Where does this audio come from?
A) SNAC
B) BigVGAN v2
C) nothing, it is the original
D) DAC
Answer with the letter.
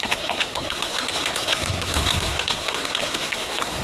A